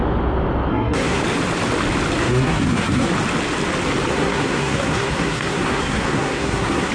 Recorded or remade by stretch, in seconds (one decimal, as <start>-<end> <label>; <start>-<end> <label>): 0.0-0.7 recorded; 0.7-1.2 remade; 1.2-2.2 recorded; 2.2-3.1 remade; 3.1-4.1 recorded; 4.1-6.9 remade